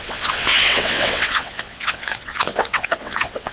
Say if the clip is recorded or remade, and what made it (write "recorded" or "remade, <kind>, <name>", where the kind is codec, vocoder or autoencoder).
remade, vocoder, WaveNeXt